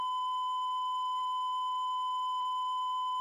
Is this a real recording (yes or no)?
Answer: no